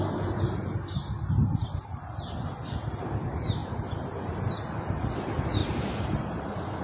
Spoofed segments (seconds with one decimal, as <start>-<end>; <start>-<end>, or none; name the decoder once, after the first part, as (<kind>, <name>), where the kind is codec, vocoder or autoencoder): 5.6-6.8 (vocoder, BigVGAN v2)